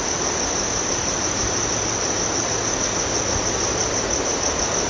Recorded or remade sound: recorded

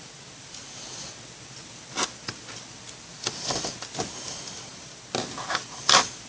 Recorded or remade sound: recorded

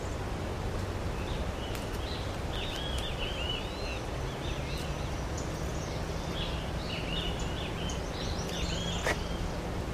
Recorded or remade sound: recorded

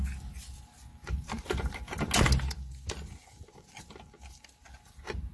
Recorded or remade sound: recorded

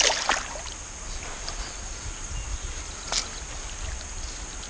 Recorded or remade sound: recorded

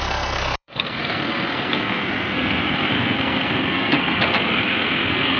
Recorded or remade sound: remade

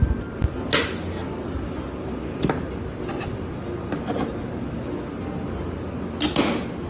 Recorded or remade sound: recorded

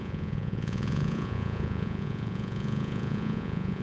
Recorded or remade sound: remade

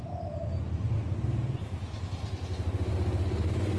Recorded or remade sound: recorded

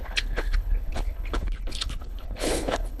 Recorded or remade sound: remade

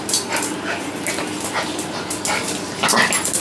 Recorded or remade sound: recorded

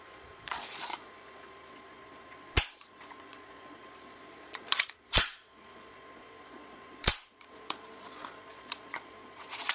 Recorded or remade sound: remade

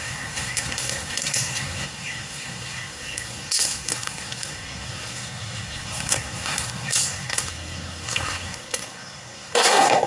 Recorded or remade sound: remade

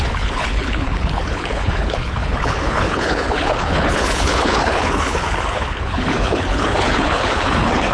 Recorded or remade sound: remade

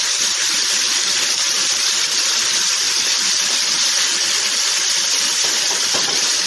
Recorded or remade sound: recorded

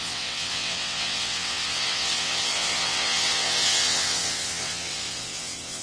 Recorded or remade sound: remade